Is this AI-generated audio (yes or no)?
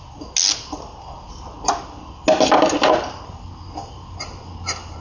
no